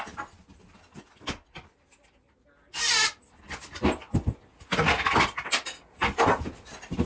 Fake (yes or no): no